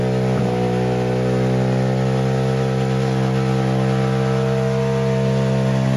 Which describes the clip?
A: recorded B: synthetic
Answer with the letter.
A